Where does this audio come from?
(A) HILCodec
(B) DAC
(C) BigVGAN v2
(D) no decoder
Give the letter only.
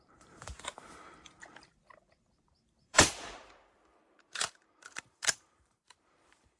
C